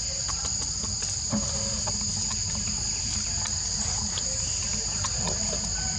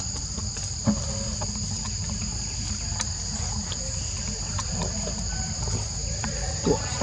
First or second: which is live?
first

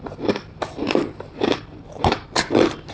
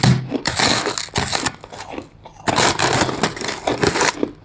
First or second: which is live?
second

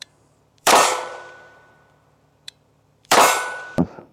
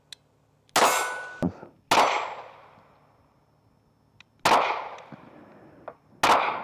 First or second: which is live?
second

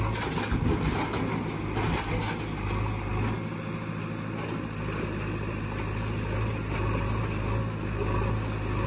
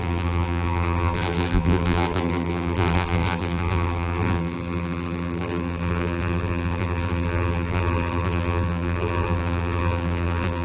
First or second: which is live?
first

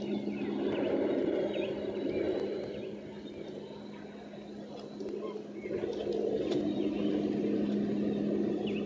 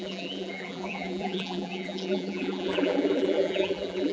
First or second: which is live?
first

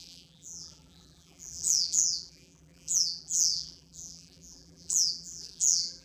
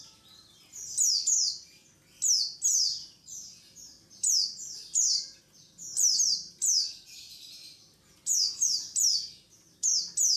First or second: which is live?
second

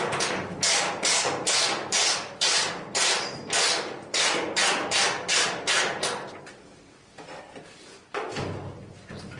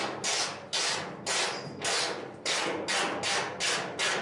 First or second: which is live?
second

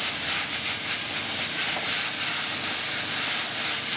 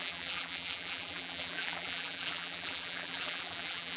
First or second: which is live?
first